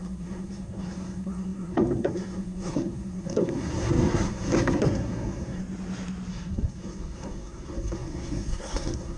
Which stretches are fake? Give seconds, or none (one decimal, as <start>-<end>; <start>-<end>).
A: 0.0-5.6; 6.3-9.2